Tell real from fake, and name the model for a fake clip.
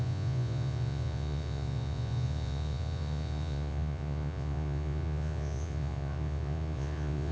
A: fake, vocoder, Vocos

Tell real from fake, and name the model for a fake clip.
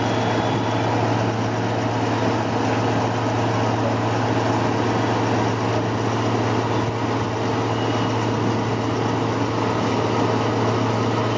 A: real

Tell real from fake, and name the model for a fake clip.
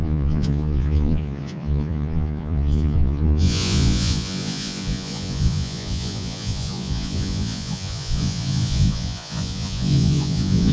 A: fake, vocoder, Vocos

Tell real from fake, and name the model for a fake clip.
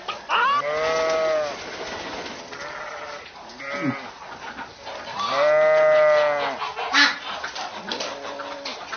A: real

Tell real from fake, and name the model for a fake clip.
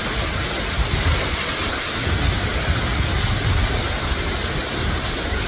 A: real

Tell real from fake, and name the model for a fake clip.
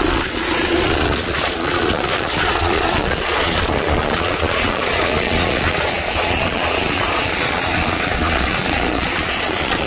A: fake, vocoder, Vocos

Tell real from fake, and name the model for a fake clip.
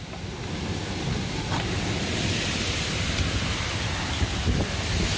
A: real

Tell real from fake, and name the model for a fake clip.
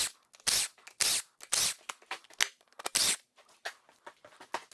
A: real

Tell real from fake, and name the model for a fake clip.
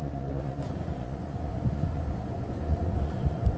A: fake, vocoder, Vocos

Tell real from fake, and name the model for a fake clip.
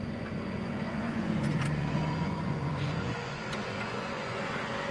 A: fake, vocoder, Vocos